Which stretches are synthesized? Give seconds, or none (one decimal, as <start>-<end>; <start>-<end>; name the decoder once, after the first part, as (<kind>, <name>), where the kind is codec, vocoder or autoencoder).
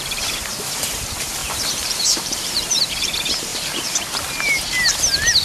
1.4-2.9 (vocoder, BigVGAN v2); 3.5-4.6